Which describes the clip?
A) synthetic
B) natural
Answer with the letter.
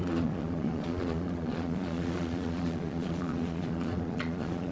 A